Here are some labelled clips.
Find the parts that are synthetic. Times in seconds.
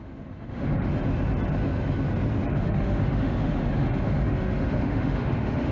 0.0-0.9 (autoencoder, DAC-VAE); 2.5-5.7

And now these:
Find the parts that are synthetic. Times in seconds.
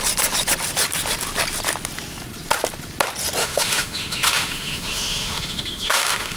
3.4-6.4 (autoencoder, DAC-VAE)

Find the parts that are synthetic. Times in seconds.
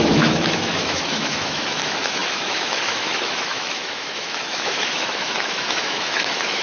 0.0-6.6 (autoencoder, DAC-VAE)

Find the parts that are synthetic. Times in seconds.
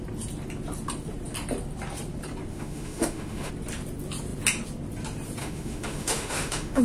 2.5-3.5 (autoencoder, DAC-VAE); 5.4-6.8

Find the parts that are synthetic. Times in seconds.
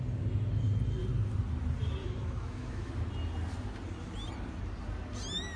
2.0-2.9 (autoencoder, DAC-VAE)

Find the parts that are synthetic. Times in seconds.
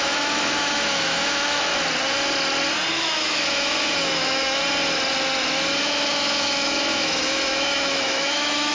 0.0-1.7 (autoencoder, DAC-VAE); 2.9-4.6; 5.8-8.7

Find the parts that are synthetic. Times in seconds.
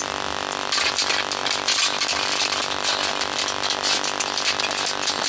none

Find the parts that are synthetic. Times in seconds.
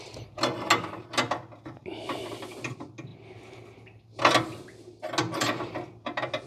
none